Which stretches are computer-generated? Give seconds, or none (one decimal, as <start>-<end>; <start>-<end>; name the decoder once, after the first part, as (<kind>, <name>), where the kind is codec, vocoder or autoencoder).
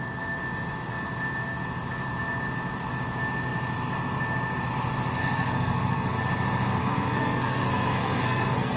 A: 5.2-6.2 (codec, SNAC); 6.8-8.8